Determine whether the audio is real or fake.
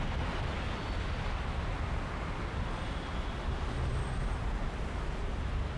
real